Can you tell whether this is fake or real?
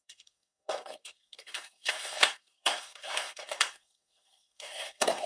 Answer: fake